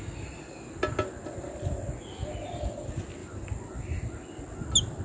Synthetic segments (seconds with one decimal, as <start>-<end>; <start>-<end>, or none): none